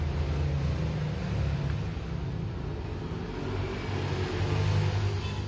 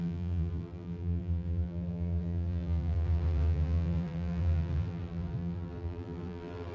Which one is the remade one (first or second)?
second